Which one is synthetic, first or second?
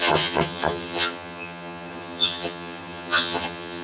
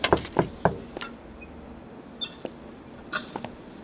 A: first